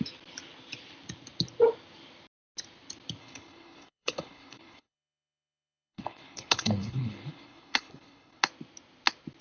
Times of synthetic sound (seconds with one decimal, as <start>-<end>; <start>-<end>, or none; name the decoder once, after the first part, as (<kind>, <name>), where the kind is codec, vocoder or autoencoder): 3.2-8.4 (codec, HILCodec)